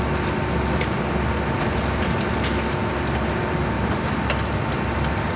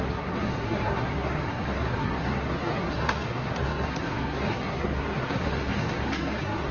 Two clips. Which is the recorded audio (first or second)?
first